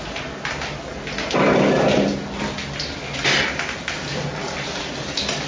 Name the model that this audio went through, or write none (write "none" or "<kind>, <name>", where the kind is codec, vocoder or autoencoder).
none